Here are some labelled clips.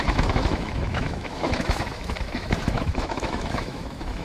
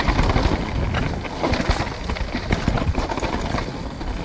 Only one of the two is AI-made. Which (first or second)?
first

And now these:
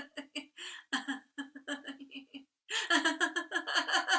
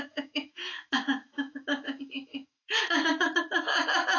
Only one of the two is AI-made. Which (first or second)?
second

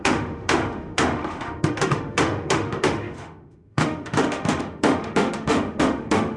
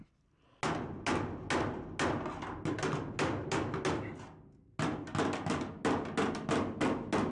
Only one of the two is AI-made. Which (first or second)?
first